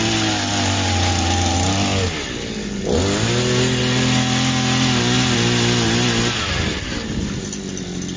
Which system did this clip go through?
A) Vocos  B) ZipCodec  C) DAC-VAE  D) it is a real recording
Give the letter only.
D